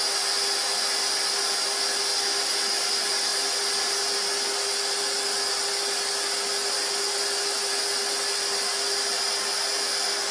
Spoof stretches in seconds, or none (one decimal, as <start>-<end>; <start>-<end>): none